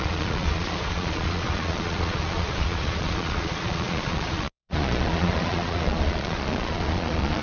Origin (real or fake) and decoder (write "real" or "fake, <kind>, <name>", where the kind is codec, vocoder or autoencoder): fake, vocoder, Vocos